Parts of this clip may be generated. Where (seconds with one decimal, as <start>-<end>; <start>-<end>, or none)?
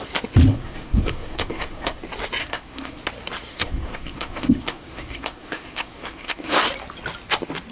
0.5-2.0; 2.4-3.0; 3.5-6.6